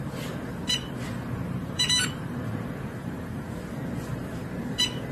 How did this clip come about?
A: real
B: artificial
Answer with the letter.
B